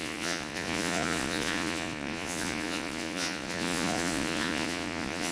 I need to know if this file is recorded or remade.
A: remade